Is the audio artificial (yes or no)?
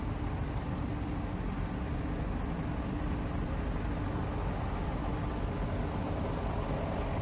no